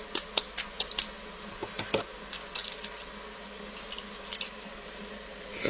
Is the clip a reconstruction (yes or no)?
no